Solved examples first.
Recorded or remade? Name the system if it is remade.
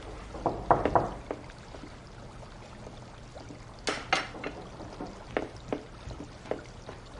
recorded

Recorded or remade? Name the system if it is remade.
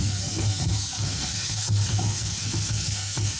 remade, codec, SNAC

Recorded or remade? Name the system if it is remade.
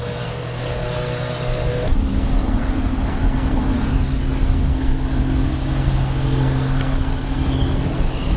remade, codec, SNAC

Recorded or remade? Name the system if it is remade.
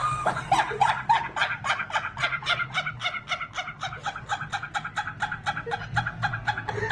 recorded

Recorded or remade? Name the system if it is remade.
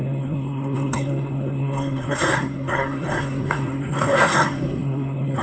remade, codec, SNAC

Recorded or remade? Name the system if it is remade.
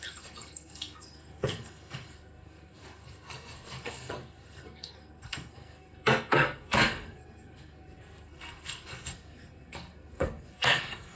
remade, codec, SNAC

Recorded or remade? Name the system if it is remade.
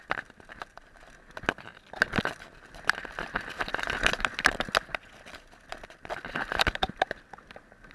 recorded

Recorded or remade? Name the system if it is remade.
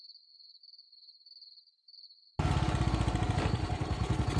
recorded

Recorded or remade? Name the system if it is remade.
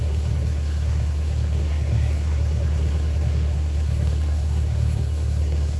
remade, codec, SNAC